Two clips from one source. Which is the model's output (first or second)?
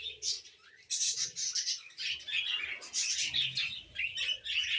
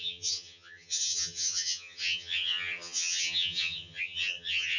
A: second